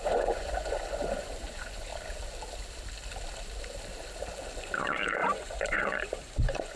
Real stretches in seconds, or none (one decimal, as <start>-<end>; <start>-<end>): 1.9-4.6

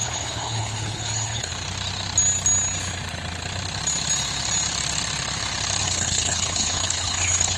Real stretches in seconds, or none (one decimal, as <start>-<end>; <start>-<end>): 1.5-5.8

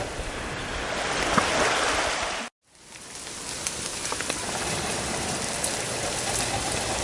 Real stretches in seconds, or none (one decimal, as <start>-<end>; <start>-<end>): 0.0-3.9; 6.1-7.0

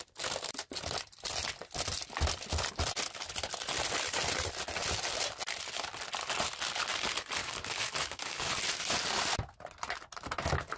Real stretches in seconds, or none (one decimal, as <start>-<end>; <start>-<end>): 0.0-7.4; 8.5-10.8

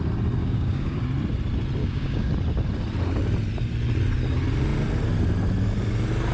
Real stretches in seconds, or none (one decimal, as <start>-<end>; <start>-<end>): 0.0-0.4; 1.0-1.8; 2.3-6.3

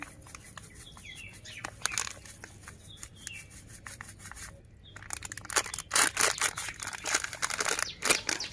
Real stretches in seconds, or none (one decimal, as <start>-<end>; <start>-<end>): 0.0-8.5

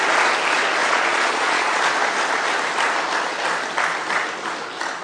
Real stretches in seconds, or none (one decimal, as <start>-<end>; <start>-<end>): 0.0-0.8; 1.8-5.0

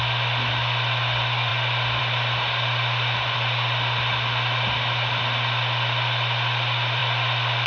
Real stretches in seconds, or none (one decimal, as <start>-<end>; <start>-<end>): 0.0-7.7